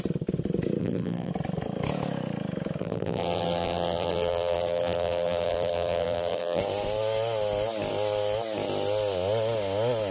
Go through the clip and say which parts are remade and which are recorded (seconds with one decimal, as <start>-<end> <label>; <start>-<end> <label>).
0.0-0.8 recorded; 0.8-1.3 remade; 1.3-2.8 recorded; 2.8-6.6 remade; 6.6-10.1 recorded